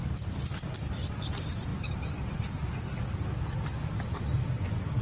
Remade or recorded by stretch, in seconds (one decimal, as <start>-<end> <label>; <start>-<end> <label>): 0.0-5.0 recorded